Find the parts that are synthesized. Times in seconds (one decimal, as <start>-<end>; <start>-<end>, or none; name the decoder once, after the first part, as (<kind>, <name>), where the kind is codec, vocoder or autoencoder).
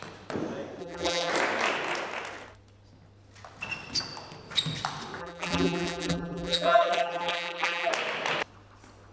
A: 0.8-1.3 (vocoder, BigVGAN v2); 5.2-7.9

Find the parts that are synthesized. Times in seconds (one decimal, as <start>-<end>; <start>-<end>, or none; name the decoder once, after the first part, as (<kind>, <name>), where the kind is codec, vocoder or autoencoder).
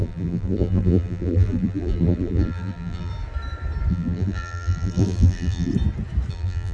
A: 0.0-3.1 (vocoder, BigVGAN v2); 3.9-5.7; 6.3-6.7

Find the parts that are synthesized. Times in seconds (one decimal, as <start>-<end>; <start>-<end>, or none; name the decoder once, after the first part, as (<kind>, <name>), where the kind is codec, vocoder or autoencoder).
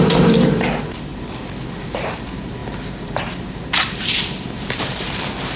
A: 0.0-1.1 (vocoder, BigVGAN v2); 1.8-5.6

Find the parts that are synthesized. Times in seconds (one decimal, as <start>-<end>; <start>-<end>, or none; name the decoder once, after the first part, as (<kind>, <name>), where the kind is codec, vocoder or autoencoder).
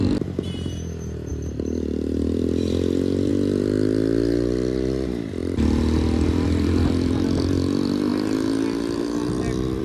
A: 1.3-3.3 (vocoder, BigVGAN v2); 5.4-7.2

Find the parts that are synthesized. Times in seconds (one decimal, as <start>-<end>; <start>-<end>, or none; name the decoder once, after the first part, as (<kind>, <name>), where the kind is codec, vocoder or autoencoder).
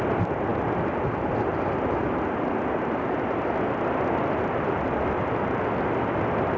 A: none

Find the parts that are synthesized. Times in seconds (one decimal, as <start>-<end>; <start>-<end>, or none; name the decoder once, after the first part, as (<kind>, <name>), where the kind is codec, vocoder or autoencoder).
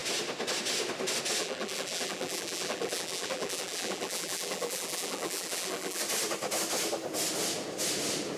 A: 1.4-6.0 (vocoder, BigVGAN v2)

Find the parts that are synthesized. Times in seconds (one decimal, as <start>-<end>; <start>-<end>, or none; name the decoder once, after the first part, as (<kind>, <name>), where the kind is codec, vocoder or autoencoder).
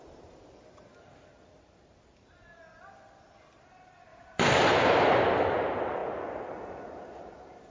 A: 4.1-5.2 (vocoder, BigVGAN v2)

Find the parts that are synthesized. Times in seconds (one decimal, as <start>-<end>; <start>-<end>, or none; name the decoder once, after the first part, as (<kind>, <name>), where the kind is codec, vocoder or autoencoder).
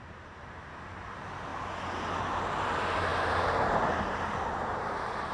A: 0.0-1.5 (vocoder, BigVGAN v2); 2.2-5.3